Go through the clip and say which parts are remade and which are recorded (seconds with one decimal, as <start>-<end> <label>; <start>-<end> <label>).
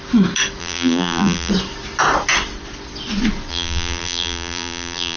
0.0-0.6 recorded; 0.6-1.5 remade; 1.5-3.5 recorded; 3.5-5.2 remade